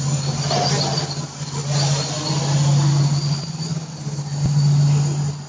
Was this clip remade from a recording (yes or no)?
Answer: no